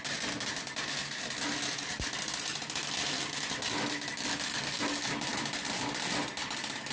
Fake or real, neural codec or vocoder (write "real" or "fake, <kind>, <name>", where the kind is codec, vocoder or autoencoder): real